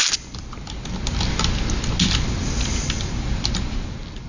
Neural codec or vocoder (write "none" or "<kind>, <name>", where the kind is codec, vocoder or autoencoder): none